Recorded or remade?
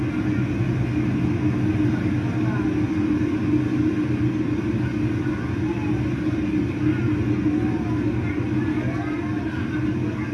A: recorded